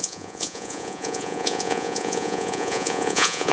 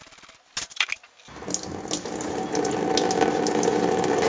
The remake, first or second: first